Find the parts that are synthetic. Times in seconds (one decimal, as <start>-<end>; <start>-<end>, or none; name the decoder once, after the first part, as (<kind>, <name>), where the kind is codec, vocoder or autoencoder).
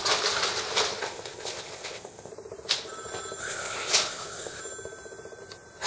1.0-2.3 (codec, ZipCodec); 3.4-4.6